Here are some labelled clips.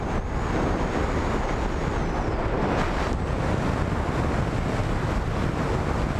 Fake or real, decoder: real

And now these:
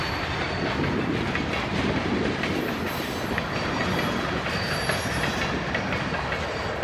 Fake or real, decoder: real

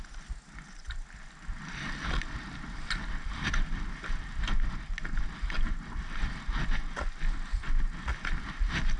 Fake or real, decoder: real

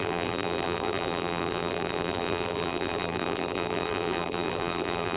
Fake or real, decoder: fake, vocoder, BigVGAN v2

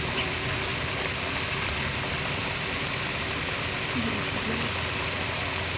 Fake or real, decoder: real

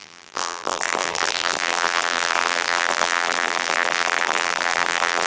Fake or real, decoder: fake, vocoder, BigVGAN v2